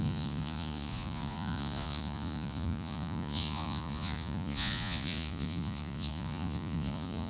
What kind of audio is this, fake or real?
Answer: fake